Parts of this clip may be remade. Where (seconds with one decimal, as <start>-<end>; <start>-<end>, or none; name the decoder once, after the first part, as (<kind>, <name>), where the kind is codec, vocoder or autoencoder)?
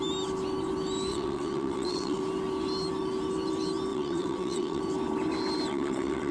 1.1-2.2 (vocoder, WaveNeXt); 3.9-4.8; 5.7-6.3